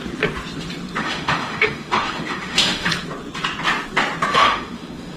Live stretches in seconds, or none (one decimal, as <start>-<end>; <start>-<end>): 0.0-1.0; 2.9-4.3